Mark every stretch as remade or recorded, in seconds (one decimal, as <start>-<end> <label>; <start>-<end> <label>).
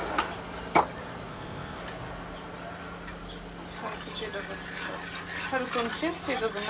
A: 0.0-1.3 recorded; 1.3-1.8 remade; 1.8-6.7 recorded